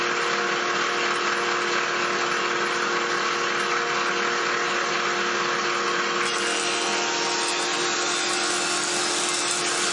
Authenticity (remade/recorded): recorded